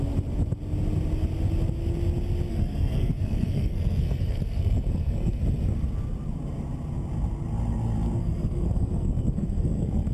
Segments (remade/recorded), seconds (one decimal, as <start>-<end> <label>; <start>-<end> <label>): 0.0-2.5 recorded; 2.5-5.4 remade; 5.4-8.2 recorded; 8.2-10.1 remade